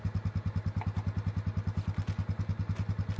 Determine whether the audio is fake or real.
real